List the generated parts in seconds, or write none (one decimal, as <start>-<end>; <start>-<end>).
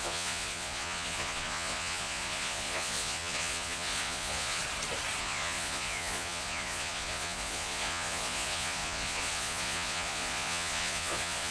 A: 0.0-4.6; 5.2-11.5